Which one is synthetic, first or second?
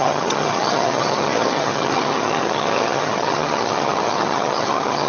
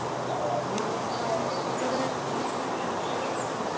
first